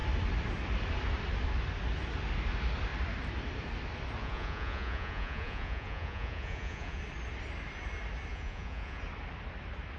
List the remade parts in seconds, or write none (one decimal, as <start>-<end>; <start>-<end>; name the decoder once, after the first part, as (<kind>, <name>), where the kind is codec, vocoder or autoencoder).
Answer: 4.2-7.0 (vocoder, Vocos); 8.3-9.0